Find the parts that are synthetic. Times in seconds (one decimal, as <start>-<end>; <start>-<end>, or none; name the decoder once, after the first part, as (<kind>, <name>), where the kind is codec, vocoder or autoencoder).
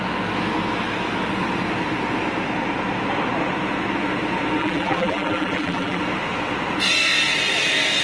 4.6-6.0 (vocoder, BigVGAN v2)